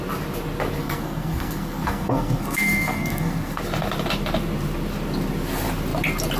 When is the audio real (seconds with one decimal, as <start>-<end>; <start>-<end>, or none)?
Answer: 0.0-0.8; 3.6-6.4